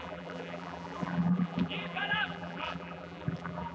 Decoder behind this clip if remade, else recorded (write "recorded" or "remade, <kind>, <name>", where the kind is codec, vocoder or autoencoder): remade, vocoder, BigVGAN v2